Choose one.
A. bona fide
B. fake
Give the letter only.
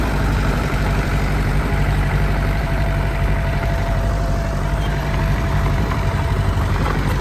B